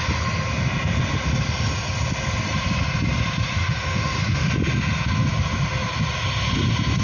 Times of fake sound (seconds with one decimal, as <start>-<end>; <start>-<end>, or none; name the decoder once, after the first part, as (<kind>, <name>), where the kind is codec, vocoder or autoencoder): 3.6-4.5 (autoencoder, DAC-VAE)